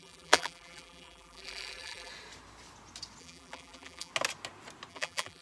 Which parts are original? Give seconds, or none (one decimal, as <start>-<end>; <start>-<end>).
2.1-3.2; 4.1-4.9